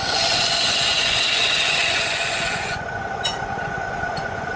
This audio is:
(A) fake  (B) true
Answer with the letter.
A